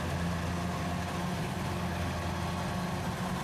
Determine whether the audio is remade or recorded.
recorded